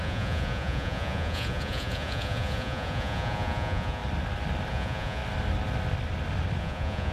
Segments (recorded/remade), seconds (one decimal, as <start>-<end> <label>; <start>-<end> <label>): 0.0-4.0 remade; 4.0-4.7 recorded; 4.7-5.2 remade; 5.2-6.6 recorded; 6.6-7.1 remade